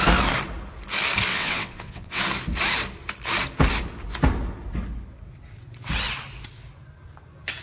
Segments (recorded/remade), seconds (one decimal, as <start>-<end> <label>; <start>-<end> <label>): 0.0-1.3 recorded; 1.3-2.2 remade; 2.2-7.6 recorded